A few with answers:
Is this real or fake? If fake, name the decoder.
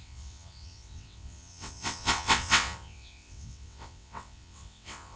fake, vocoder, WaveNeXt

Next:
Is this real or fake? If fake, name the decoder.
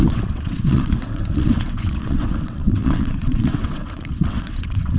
fake, vocoder, WaveNeXt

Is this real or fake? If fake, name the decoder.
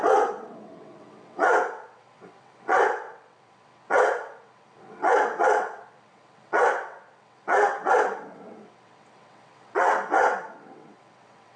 fake, vocoder, WaveNeXt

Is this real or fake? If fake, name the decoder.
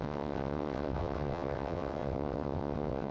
fake, vocoder, WaveNeXt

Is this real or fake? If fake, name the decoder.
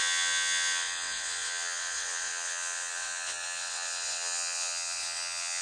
fake, vocoder, WaveNeXt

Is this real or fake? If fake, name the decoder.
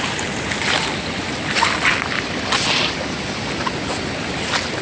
real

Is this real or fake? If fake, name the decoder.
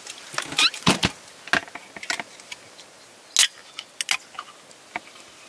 real